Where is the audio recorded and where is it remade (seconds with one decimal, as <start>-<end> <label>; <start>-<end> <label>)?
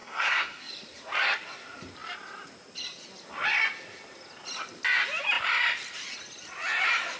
0.0-0.7 remade; 0.7-7.2 recorded